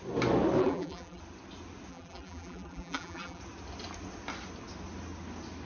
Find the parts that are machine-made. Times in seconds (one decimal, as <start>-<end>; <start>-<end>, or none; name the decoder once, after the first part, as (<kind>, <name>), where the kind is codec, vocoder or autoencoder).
0.6-1.2 (vocoder, BigVGAN v2); 1.9-3.4